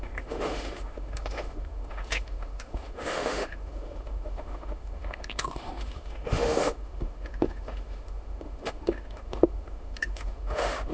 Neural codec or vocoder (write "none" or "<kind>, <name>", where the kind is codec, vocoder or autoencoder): autoencoder, DAC-VAE